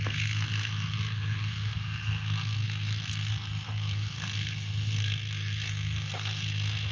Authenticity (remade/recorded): remade